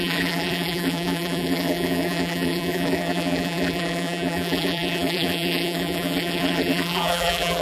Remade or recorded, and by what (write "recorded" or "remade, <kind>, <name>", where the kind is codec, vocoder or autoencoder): remade, vocoder, BigVGAN v2